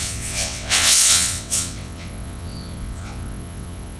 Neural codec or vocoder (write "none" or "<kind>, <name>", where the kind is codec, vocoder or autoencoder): vocoder, WaveNeXt